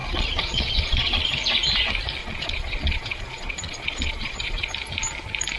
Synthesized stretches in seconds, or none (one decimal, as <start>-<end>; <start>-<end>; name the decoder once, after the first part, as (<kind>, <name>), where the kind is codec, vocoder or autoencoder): 0.0-1.3 (vocoder, Vocos); 2.2-4.7